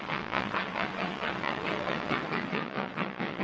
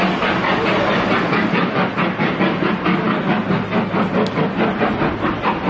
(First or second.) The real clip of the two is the second